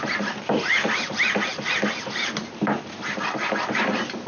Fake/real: real